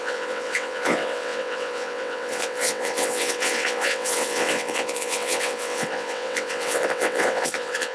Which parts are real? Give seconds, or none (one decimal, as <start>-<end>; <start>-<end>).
none

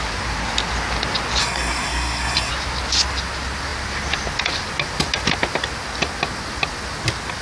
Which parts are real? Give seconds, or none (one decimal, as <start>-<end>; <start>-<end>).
0.0-1.4; 2.5-7.4